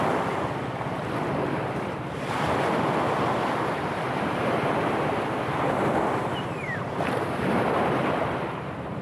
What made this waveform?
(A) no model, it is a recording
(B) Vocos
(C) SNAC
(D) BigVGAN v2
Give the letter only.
D